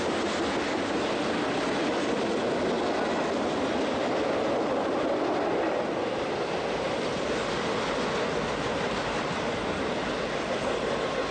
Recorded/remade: recorded